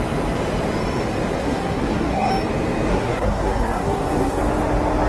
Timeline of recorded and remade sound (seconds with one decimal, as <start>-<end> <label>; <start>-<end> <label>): 0.0-1.4 recorded; 1.4-2.3 remade; 2.3-2.9 recorded; 2.9-4.4 remade; 4.4-5.1 recorded